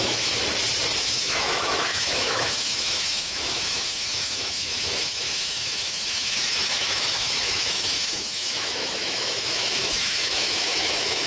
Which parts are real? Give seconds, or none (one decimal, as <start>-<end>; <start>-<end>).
0.4-1.0